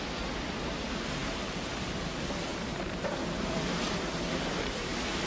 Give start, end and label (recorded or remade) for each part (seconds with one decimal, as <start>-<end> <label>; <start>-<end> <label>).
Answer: 0.0-1.2 recorded; 1.2-2.1 remade; 2.1-2.5 recorded; 2.5-5.3 remade